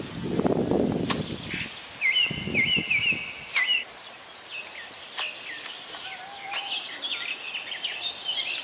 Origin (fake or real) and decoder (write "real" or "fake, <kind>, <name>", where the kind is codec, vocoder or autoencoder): real